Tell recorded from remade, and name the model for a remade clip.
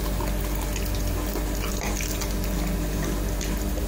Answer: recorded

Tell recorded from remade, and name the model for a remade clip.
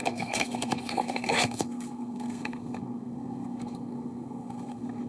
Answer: remade, codec, SNAC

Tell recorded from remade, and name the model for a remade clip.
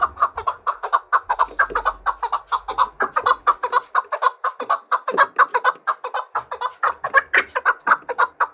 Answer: recorded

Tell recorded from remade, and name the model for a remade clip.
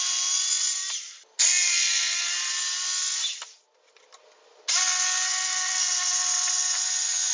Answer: recorded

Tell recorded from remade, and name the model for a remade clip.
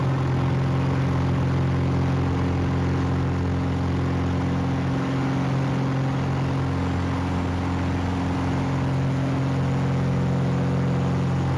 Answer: recorded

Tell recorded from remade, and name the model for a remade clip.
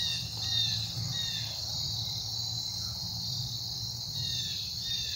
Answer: recorded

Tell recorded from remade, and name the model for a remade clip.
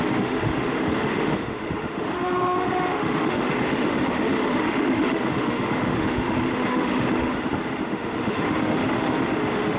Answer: remade, autoencoder, DAC-VAE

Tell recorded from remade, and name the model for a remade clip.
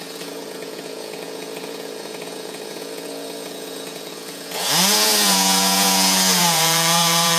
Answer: remade, vocoder, Vocos